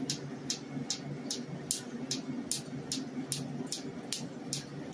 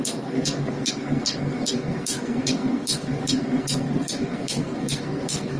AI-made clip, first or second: second